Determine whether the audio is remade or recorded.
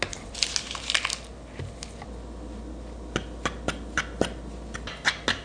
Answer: recorded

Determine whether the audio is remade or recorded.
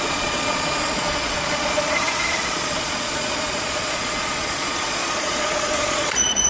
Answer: remade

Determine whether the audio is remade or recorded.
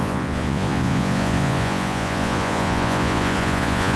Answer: remade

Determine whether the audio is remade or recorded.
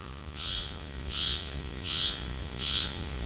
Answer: remade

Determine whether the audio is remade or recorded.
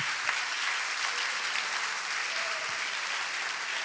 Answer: recorded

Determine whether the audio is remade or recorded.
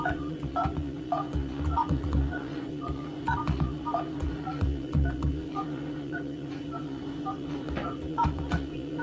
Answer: remade